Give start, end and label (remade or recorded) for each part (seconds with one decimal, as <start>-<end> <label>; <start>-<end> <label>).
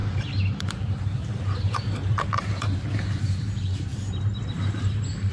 0.0-5.3 remade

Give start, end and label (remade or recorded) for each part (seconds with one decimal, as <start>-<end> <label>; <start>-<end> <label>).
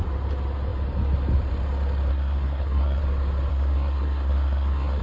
0.0-2.1 recorded; 2.1-3.0 remade; 3.0-3.5 recorded; 3.5-5.0 remade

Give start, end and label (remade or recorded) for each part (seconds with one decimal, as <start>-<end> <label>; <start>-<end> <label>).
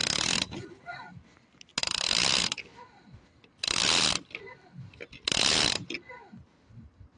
0.0-7.2 recorded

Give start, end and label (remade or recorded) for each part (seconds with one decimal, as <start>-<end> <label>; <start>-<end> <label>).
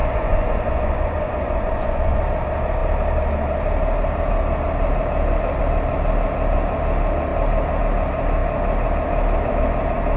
0.0-2.2 remade; 2.2-10.2 recorded